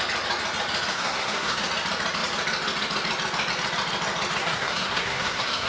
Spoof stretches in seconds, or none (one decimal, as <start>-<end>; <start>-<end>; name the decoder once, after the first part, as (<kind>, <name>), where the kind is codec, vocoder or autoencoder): 0.9-1.7 (codec, SNAC); 4.4-5.7